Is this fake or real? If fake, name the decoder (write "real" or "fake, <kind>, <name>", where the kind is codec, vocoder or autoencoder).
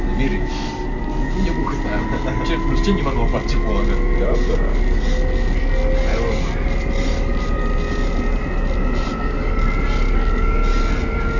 real